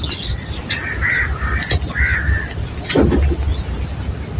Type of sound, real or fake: real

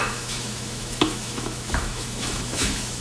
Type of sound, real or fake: fake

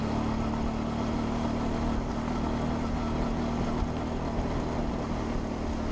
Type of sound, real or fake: real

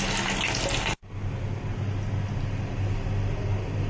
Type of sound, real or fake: real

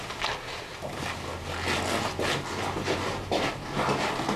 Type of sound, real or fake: real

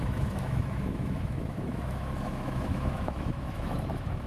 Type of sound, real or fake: fake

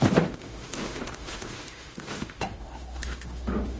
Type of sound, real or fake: fake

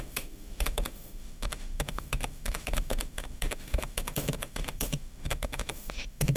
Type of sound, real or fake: fake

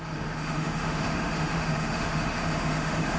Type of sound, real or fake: fake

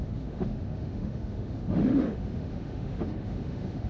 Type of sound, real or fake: fake